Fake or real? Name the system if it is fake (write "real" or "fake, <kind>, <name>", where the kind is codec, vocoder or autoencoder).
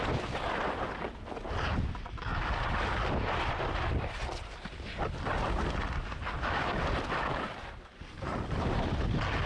real